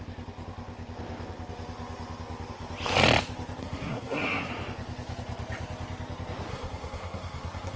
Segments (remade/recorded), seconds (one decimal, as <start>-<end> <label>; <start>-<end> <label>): 0.0-3.6 recorded; 3.6-4.5 remade; 4.5-6.5 recorded; 6.5-7.8 remade